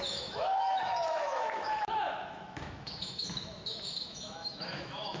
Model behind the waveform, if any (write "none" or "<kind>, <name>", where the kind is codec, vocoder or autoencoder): autoencoder, DAC-VAE